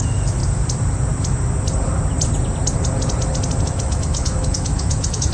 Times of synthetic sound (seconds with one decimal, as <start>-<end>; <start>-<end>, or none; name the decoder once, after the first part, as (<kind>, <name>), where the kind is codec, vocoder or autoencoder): 0.0-0.4 (autoencoder, DAC-VAE); 3.6-5.3